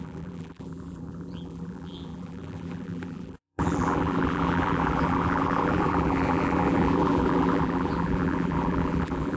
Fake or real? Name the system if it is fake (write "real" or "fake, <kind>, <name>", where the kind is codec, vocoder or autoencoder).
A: fake, vocoder, BigVGAN v2